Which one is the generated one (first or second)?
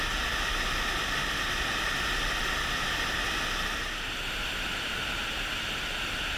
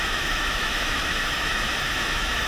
second